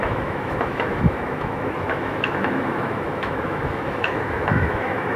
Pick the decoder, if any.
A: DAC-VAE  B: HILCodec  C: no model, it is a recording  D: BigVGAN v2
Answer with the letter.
A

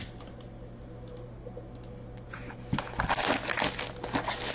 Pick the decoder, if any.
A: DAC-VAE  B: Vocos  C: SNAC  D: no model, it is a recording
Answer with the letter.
D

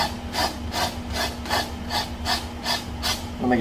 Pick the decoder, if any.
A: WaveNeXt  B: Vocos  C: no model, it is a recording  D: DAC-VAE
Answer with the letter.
C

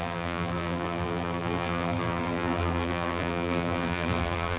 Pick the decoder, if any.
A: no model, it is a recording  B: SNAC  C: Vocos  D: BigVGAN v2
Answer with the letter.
D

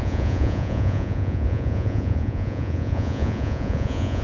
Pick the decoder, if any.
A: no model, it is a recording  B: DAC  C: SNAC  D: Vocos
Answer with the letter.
D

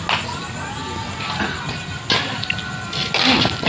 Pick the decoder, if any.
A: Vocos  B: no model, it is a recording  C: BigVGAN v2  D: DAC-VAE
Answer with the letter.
B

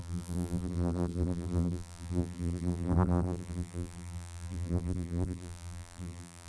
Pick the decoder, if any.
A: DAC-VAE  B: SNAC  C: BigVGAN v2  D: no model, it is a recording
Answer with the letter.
C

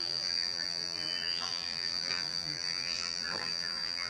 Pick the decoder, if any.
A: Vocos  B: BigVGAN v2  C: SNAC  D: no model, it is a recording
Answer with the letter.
B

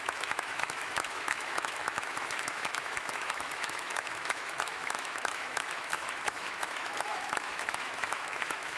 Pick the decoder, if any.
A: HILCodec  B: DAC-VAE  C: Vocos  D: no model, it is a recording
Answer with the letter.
B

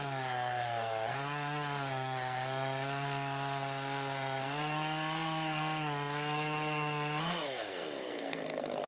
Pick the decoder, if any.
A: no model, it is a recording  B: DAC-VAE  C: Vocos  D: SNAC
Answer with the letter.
D